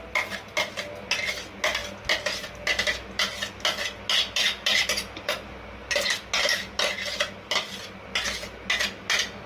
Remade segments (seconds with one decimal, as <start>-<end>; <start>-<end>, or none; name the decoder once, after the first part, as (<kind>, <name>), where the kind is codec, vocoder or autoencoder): none